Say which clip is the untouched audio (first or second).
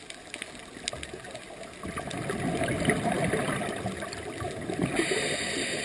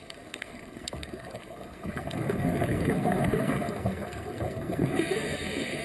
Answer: first